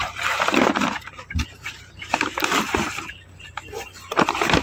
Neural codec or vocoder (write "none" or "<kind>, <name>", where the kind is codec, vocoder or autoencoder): none